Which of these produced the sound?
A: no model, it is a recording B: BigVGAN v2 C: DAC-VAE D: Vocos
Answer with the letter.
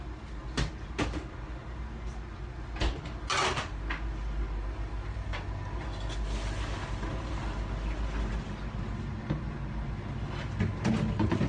A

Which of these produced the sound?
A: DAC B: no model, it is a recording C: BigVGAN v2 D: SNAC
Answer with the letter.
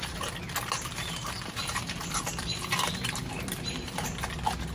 B